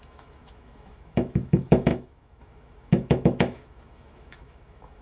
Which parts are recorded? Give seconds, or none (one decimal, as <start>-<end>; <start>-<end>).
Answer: none